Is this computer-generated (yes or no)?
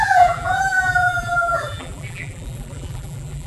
yes